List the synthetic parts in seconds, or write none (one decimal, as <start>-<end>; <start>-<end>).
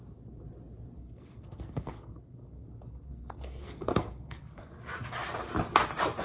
1.0-4.7